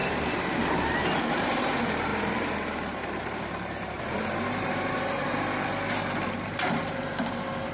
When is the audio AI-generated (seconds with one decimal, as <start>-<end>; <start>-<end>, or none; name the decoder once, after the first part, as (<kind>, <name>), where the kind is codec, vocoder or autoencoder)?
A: 0.0-5.7 (vocoder, BigVGAN v2); 6.7-7.7